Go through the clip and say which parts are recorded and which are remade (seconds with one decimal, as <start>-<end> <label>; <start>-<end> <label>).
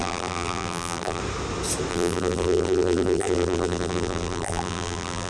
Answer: 0.0-1.2 remade; 1.2-1.9 recorded; 1.9-5.3 remade